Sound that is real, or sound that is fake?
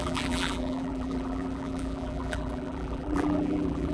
fake